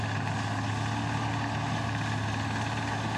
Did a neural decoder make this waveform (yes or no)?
no